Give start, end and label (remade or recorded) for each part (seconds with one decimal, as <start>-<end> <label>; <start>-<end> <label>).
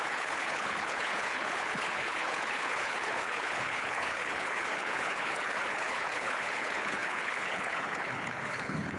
0.0-9.0 remade